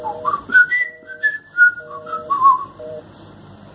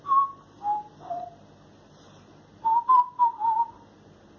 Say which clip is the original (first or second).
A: second